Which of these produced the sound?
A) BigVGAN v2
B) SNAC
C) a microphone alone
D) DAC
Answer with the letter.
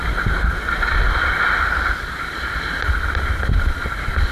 C